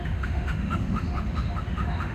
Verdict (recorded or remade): remade